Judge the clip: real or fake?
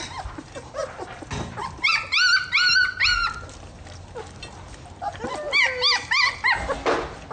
real